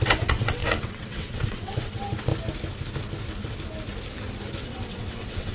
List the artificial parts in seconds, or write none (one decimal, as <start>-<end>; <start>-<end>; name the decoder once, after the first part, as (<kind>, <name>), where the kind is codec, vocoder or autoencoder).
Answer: 0.0-2.3 (vocoder, WaveNeXt); 4.6-5.5